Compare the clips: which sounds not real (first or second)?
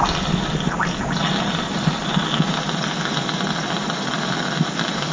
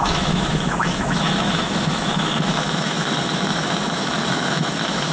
second